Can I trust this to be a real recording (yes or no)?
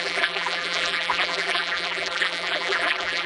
no